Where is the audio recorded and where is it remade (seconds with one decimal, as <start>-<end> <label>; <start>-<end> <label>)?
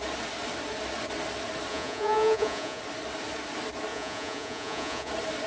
0.0-1.7 recorded; 1.7-2.8 remade; 2.8-3.9 recorded; 3.9-5.1 remade; 5.1-5.5 recorded